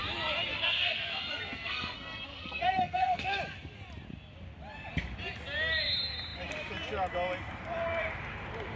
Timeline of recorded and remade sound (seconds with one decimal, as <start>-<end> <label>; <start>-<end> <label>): 0.0-0.5 recorded; 0.5-3.4 remade; 3.4-8.8 recorded